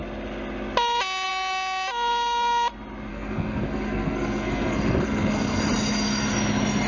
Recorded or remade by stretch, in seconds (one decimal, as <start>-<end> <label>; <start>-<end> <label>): 0.0-3.1 recorded; 3.1-5.6 remade; 5.6-6.9 recorded